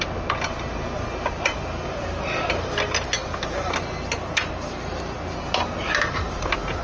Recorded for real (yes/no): yes